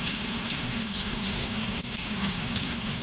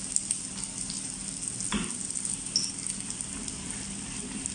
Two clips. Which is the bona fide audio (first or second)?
second